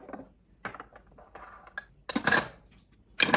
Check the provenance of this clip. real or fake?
real